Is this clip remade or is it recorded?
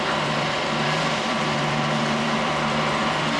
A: remade